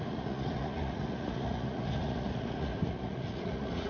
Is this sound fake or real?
fake